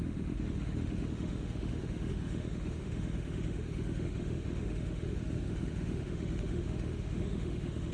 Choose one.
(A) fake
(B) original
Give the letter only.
A